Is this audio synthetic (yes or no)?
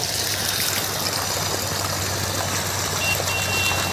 no